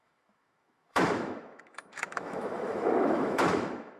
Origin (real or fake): fake